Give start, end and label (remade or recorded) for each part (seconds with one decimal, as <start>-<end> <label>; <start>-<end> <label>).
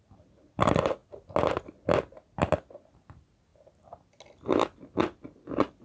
0.0-5.8 recorded